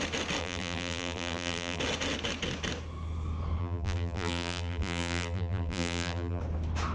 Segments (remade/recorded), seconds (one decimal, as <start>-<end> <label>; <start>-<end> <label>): 0.0-0.4 recorded; 0.4-1.8 remade; 1.8-3.6 recorded; 3.6-6.4 remade; 6.4-6.9 recorded